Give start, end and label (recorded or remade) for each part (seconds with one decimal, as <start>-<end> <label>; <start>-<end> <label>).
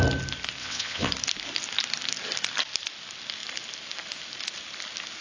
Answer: 0.0-0.6 recorded; 0.6-1.1 remade; 1.1-5.2 recorded